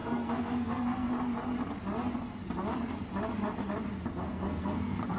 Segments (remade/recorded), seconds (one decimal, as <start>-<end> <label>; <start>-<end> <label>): 0.0-1.1 remade; 1.1-4.2 recorded; 4.2-5.2 remade

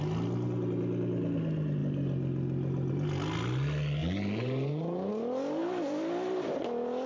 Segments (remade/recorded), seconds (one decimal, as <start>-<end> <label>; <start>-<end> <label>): 0.0-7.1 recorded

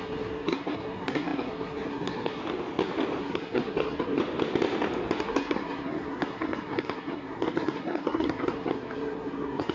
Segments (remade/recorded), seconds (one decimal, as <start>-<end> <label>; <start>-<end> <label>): 0.0-2.4 remade; 2.4-3.2 recorded; 3.2-4.2 remade; 4.2-5.2 recorded; 5.2-9.7 remade

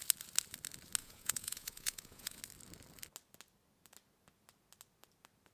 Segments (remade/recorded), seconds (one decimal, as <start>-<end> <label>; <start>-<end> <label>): 0.0-1.0 recorded; 1.0-2.4 remade; 2.4-5.5 recorded

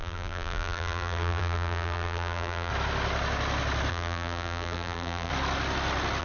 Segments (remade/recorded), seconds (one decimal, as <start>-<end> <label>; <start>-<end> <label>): 0.0-2.7 remade; 2.7-3.9 recorded; 3.9-5.3 remade; 5.3-6.2 recorded

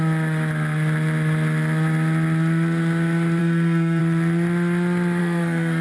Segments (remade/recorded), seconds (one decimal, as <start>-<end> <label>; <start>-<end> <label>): 0.0-3.4 recorded; 3.4-4.0 remade; 4.0-5.2 recorded; 5.2-5.8 remade

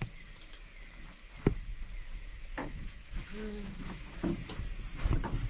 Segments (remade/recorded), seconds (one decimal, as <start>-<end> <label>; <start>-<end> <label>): 0.0-2.6 recorded; 2.6-4.3 remade; 4.3-5.5 recorded